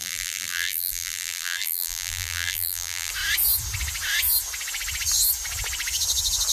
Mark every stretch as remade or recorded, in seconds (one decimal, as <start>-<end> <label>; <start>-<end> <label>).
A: 0.0-3.1 remade; 3.1-6.5 recorded